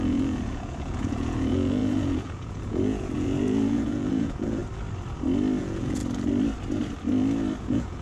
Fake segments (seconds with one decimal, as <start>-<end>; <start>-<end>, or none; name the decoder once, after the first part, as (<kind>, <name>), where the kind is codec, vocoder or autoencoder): 0.0-4.6 (vocoder, Vocos); 5.6-6.0; 7.6-8.0